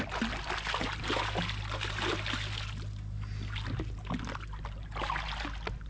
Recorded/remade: recorded